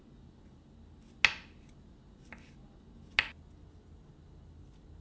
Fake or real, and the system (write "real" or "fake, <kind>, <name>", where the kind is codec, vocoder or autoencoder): real